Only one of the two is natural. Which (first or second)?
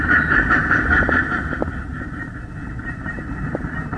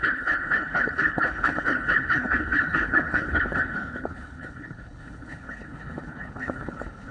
first